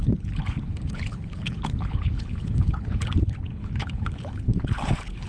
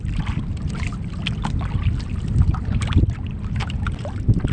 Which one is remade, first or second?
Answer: first